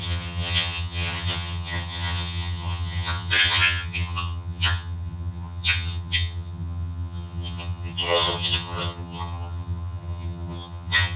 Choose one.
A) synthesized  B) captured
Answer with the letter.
A